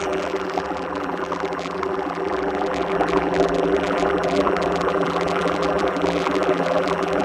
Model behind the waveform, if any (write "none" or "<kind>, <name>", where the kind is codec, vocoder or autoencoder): vocoder, BigVGAN v2